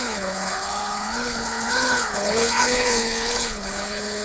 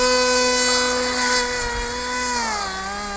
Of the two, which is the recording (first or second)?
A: second